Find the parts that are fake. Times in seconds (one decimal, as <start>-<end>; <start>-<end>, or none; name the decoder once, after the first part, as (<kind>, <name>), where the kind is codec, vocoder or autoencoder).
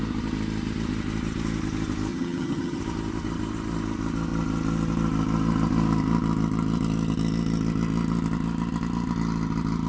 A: 2.1-2.8 (vocoder, HiFi-GAN)